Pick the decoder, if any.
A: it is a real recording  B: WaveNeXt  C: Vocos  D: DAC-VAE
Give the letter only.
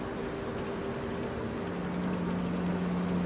A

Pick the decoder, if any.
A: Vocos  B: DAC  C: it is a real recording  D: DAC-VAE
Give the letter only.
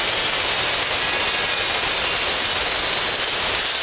C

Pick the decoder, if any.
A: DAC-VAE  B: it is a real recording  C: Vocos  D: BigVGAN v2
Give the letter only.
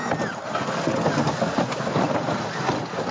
B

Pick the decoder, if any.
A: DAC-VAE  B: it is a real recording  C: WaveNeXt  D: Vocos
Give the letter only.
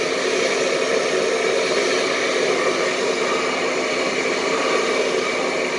B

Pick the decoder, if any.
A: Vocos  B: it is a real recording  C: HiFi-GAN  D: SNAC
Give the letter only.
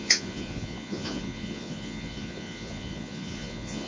A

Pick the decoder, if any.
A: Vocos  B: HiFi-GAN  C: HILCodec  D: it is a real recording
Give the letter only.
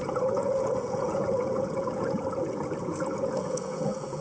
A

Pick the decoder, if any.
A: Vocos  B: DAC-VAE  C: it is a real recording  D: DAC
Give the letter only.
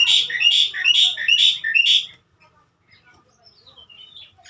C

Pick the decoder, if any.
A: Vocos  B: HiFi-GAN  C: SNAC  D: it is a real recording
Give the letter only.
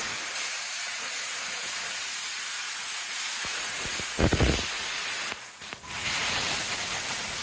A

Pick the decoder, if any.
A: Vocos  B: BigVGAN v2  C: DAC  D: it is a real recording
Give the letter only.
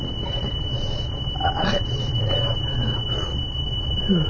A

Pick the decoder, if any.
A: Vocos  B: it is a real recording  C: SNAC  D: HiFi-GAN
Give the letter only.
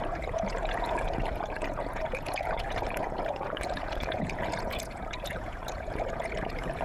A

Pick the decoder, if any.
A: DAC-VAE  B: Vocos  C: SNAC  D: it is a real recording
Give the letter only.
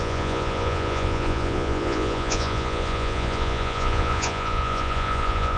B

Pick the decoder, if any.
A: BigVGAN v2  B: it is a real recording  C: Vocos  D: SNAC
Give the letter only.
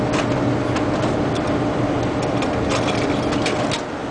B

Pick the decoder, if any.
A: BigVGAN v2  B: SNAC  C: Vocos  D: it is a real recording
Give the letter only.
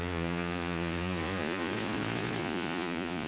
C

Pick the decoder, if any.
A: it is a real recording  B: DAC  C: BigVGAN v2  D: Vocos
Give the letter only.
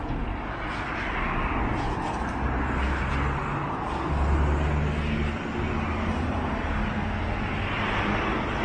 A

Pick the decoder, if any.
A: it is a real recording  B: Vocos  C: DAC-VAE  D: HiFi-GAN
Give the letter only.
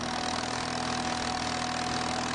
A